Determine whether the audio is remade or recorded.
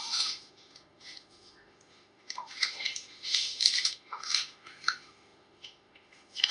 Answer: remade